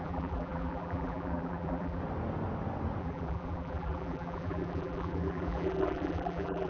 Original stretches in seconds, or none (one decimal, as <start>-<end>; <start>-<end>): 2.0-3.0